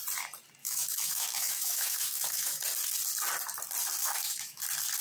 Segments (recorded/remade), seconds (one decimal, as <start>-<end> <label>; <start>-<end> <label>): 0.0-0.6 recorded; 0.6-2.6 remade; 2.6-4.0 recorded; 4.0-4.6 remade; 4.6-5.0 recorded